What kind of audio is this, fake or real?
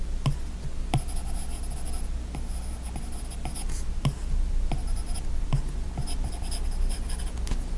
real